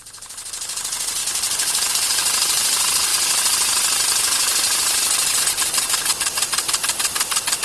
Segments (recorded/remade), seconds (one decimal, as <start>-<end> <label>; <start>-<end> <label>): 0.0-3.1 recorded; 3.1-5.4 remade; 5.4-6.1 recorded; 6.1-6.8 remade; 6.8-7.6 recorded

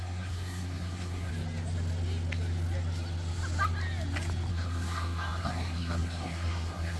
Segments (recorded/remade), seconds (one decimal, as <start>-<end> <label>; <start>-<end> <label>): 0.0-1.3 remade; 1.3-4.5 recorded; 4.5-7.0 remade